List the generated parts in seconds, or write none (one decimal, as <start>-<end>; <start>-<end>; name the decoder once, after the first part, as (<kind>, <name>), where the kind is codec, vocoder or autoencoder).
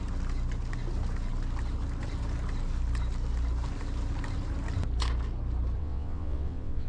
5.8-6.9 (vocoder, WaveNeXt)